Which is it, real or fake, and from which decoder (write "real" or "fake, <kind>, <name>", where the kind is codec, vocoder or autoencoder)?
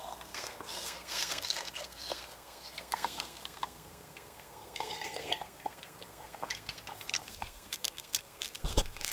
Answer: fake, codec, SNAC